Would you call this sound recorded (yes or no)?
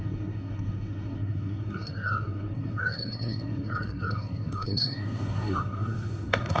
no